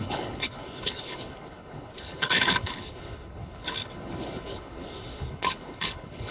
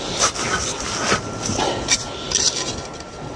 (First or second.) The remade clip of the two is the first